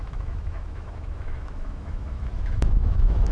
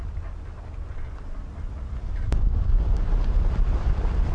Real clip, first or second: second